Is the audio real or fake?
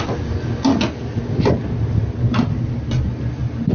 real